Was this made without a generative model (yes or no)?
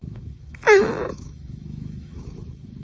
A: no